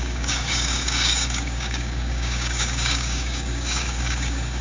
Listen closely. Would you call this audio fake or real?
fake